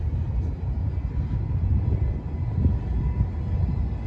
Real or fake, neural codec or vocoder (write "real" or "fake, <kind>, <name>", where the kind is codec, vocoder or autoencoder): real